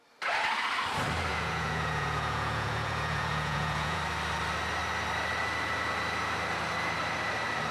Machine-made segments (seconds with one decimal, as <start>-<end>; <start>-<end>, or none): 1.3-4.0